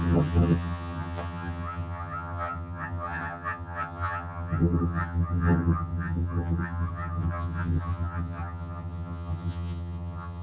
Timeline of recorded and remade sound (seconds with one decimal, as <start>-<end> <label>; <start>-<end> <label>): 0.0-10.4 remade